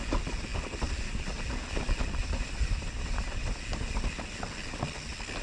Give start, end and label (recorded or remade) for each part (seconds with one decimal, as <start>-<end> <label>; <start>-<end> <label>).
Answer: 0.0-5.4 recorded